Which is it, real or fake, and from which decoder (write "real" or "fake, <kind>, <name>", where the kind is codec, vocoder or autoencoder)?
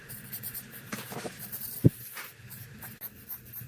fake, vocoder, BigVGAN v2